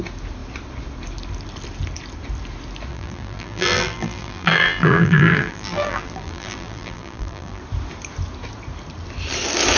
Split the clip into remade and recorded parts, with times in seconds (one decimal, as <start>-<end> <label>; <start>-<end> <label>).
0.0-2.9 recorded; 2.9-7.6 remade; 7.6-9.8 recorded